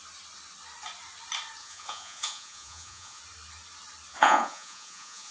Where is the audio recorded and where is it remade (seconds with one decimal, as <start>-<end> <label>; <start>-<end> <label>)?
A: 0.0-1.6 recorded; 1.6-3.2 remade; 3.2-4.1 recorded; 4.1-5.3 remade